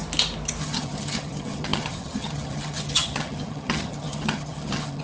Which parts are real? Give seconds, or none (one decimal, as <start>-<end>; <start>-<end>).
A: 0.0-0.6